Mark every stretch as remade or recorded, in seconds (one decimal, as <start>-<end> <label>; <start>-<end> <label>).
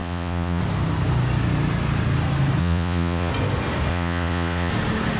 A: 0.0-0.6 remade; 0.6-2.6 recorded; 2.6-3.3 remade; 3.3-3.9 recorded; 3.9-4.7 remade; 4.7-5.2 recorded